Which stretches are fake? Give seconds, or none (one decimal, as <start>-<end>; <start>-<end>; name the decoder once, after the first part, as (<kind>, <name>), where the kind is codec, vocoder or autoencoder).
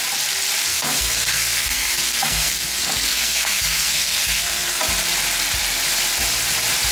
0.7-4.8 (codec, SNAC)